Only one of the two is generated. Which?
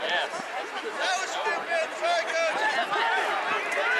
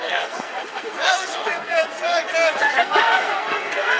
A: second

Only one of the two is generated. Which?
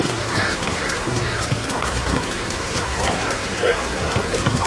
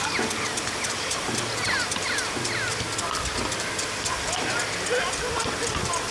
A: first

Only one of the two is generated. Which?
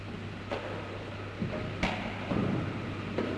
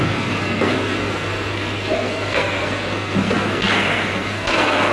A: second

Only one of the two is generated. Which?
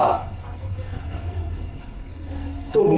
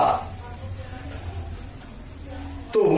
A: first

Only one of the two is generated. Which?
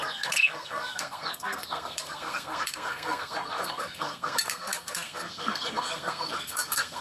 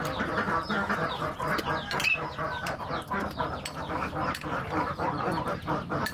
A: first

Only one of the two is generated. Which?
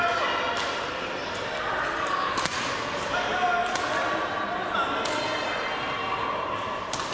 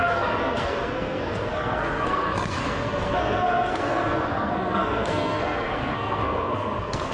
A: second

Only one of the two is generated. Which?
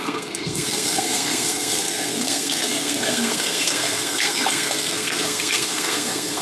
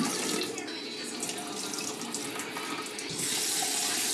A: first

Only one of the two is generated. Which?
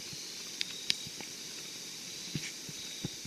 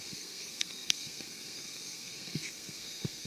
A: second